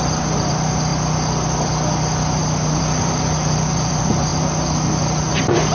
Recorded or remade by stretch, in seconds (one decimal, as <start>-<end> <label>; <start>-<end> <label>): 0.0-0.9 remade; 0.9-2.8 recorded; 2.8-4.3 remade; 4.3-5.3 recorded; 5.3-5.7 remade